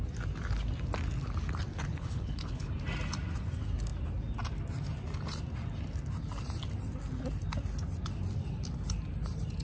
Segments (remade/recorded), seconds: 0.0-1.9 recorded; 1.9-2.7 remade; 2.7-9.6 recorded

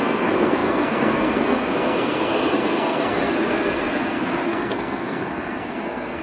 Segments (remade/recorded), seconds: 0.0-6.2 remade

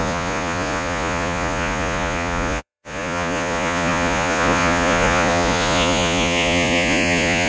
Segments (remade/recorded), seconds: 0.0-7.5 remade

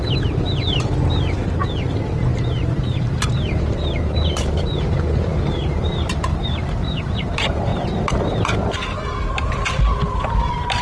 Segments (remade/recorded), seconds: 0.0-7.7 remade; 7.7-10.3 recorded; 10.3-10.8 remade

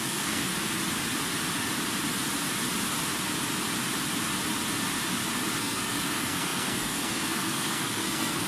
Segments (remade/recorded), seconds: 0.0-0.5 remade; 0.5-5.6 recorded; 5.6-8.5 remade